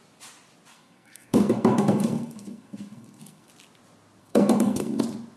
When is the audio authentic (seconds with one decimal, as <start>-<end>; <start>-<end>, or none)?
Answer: 0.0-0.7; 3.5-4.2; 5.0-5.4